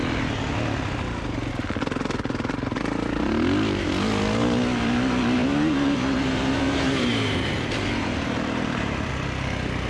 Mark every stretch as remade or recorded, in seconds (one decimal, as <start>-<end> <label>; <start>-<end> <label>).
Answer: 0.0-5.4 recorded; 5.4-9.1 remade; 9.1-9.9 recorded